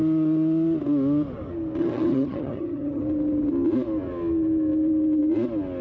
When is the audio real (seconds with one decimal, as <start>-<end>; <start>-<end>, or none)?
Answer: 0.0-1.8; 3.0-5.8